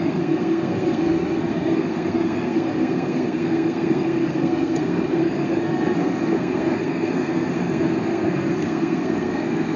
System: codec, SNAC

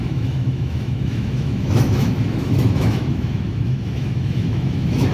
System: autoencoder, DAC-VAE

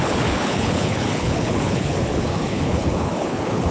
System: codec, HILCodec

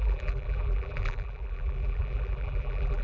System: vocoder, BigVGAN v2